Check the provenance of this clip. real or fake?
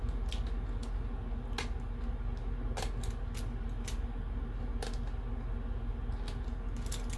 real